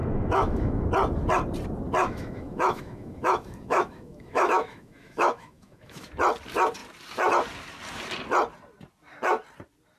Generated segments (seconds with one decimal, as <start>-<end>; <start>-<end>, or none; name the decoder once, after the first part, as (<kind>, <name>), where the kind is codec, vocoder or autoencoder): 0.0-0.8 (autoencoder, DAC-VAE); 2.0-6.1